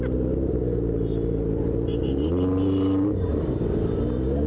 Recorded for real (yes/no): yes